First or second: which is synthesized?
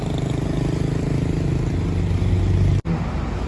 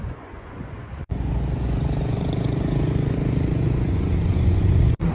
second